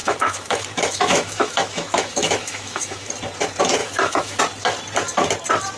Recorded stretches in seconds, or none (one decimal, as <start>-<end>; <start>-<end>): 3.1-3.8; 4.4-5.8